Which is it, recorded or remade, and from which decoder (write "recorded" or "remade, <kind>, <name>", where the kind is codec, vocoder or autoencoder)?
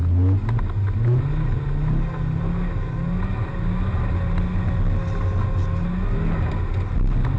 recorded